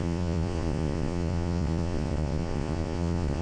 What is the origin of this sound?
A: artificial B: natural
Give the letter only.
A